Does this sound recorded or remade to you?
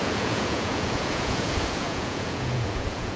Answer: remade